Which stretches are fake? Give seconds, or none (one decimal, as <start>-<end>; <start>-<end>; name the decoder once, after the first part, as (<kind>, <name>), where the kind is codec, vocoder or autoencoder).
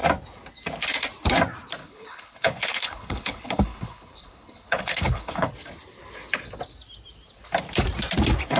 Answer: 1.8-5.5 (codec, HILCodec)